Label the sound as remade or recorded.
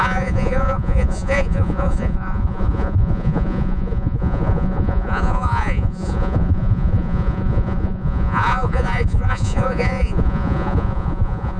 remade